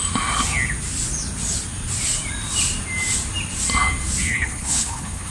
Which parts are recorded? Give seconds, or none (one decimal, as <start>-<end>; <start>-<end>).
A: 0.0-4.2